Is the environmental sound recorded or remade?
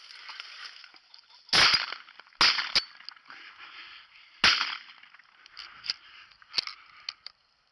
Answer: recorded